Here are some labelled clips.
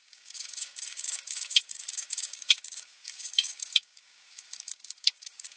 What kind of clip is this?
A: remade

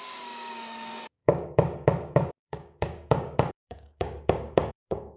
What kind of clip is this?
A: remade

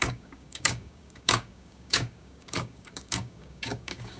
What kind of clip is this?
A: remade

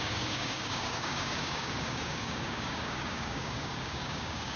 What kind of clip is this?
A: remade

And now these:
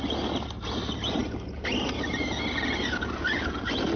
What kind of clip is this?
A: recorded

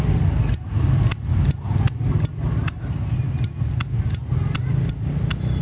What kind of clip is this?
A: recorded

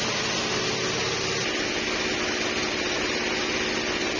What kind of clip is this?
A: recorded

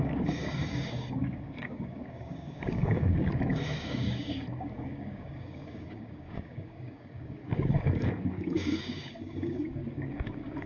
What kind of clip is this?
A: remade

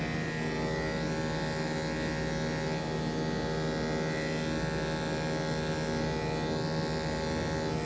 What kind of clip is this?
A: recorded